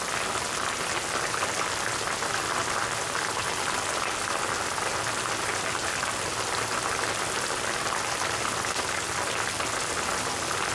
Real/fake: real